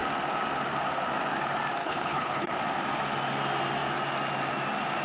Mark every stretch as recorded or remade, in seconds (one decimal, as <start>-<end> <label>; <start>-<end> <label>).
0.0-1.8 recorded; 1.8-2.5 remade; 2.5-5.0 recorded